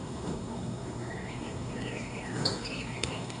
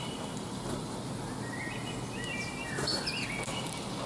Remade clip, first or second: first